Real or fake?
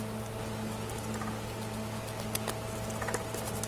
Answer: real